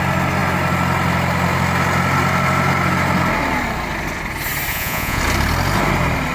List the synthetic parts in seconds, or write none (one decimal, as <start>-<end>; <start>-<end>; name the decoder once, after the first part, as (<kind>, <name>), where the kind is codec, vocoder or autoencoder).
4.7-5.2 (vocoder, Vocos)